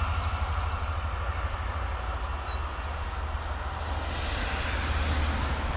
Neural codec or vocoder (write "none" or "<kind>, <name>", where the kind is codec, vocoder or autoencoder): none